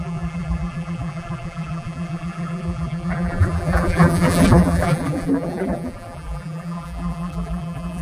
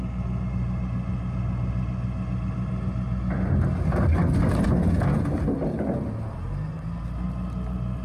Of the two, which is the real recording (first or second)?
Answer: second